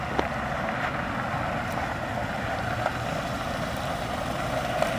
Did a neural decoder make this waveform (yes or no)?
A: no